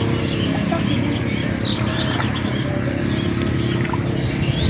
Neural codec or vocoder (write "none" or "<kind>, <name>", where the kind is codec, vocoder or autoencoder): none